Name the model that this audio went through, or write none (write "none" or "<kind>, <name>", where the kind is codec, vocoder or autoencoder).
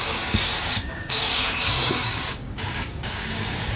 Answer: codec, DAC